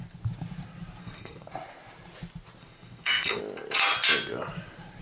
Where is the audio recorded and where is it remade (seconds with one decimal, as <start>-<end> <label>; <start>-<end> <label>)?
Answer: 0.0-1.0 recorded; 1.0-1.5 remade; 1.5-2.6 recorded; 2.6-3.4 remade; 3.4-5.0 recorded